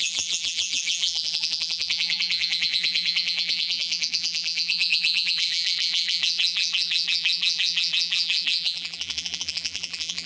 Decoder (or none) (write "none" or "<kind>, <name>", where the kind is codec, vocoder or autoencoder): vocoder, BigVGAN v2